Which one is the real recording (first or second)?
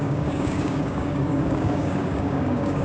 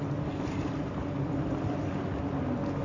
second